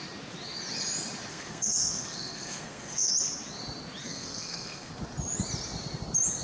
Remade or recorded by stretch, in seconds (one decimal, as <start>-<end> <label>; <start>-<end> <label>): 0.0-1.3 recorded; 1.3-3.1 remade; 3.1-4.0 recorded; 4.0-4.9 remade; 4.9-6.4 recorded